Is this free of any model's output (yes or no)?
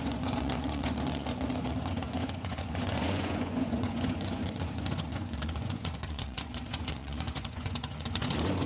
no